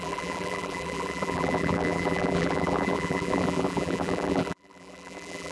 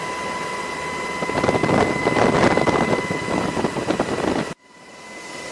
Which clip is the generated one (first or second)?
first